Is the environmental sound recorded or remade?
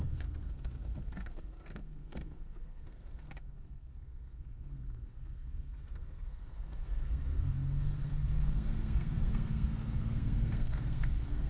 remade